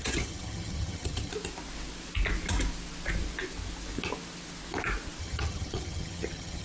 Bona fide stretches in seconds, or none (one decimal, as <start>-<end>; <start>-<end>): 1.3-5.2